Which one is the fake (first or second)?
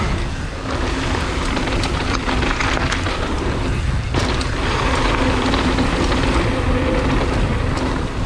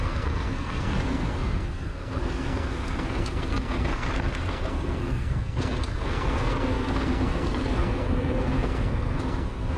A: second